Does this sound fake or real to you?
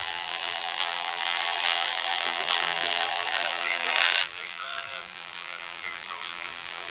fake